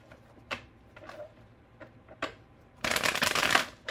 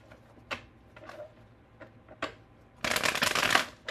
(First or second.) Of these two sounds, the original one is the second